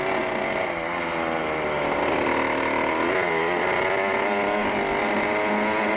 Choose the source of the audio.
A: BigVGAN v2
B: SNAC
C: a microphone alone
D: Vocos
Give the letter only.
C